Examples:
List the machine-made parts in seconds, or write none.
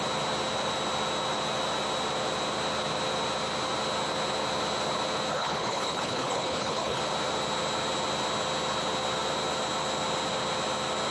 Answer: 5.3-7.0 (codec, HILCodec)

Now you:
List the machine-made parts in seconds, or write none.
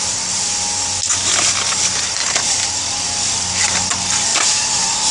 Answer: 4.3-5.1 (vocoder, BigVGAN v2)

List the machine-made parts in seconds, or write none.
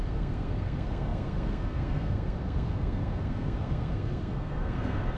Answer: 0.0-5.2 (codec, SNAC)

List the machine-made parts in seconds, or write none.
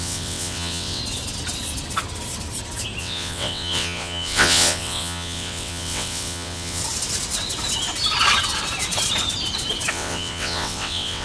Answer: 0.0-1.0 (vocoder, WaveNeXt); 3.0-6.8; 9.9-11.2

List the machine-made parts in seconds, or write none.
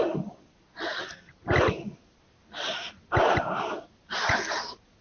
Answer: none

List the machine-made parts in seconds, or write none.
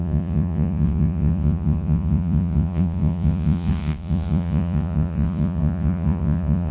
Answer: 0.0-6.7 (vocoder, Vocos)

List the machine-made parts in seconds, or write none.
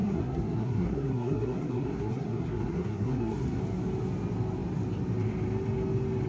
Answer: 0.0-3.6 (codec, SNAC)